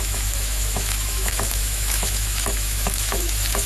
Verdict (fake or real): fake